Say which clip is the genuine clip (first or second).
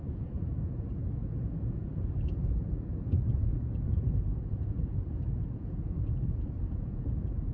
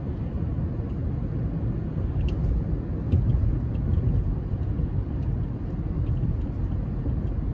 second